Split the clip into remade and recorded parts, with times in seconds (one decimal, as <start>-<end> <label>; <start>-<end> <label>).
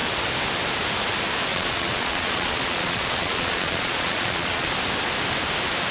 0.0-1.5 recorded; 1.5-4.7 remade; 4.7-5.9 recorded